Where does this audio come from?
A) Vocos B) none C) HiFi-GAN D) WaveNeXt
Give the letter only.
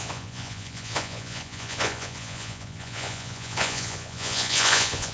A